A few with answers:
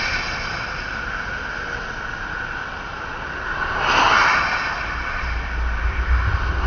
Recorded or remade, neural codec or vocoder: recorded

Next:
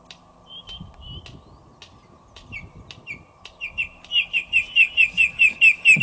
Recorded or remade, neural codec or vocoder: recorded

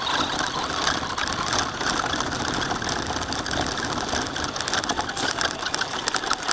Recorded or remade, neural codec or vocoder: recorded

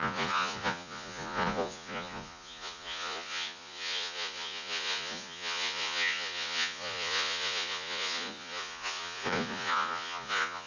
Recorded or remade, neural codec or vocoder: remade, vocoder, Vocos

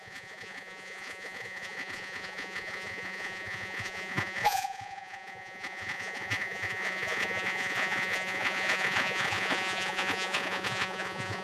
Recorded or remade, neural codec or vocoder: remade, vocoder, Vocos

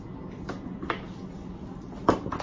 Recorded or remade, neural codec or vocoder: recorded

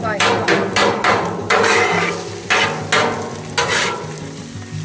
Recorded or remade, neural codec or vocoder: recorded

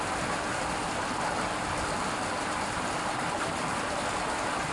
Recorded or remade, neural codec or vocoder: recorded